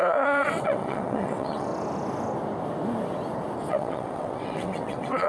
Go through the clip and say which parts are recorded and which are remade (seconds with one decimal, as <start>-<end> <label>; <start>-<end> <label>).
0.0-1.7 remade; 1.7-3.7 recorded; 3.7-5.3 remade